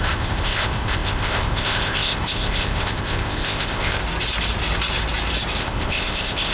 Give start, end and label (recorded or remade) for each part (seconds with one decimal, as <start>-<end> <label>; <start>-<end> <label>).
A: 0.0-4.0 remade; 4.0-5.6 recorded; 5.6-6.5 remade